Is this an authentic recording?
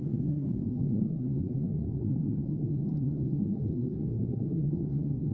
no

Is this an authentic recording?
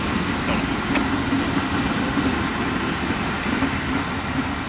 yes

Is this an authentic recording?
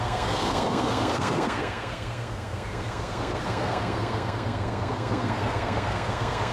no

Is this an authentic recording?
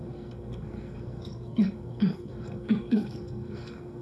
no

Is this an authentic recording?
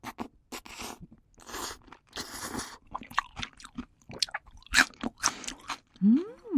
yes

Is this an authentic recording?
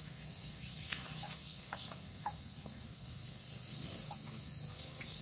no